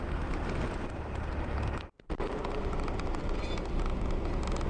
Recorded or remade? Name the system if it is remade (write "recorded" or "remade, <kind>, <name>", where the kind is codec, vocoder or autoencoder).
recorded